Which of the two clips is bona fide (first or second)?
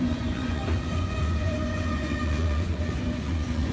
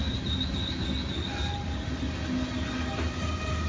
second